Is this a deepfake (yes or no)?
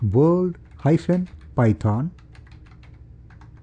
no